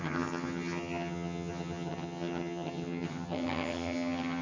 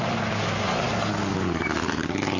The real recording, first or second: second